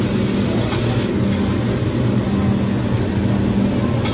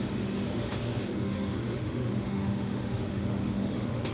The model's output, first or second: second